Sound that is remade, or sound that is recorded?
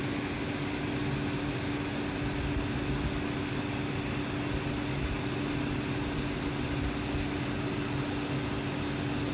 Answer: recorded